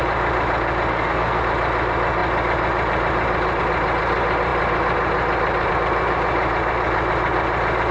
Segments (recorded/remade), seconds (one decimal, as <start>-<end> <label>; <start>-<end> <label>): 0.0-0.9 recorded; 0.9-1.4 remade; 1.4-7.9 recorded